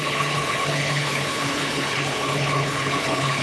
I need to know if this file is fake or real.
fake